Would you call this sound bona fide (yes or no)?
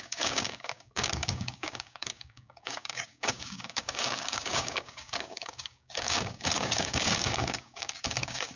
no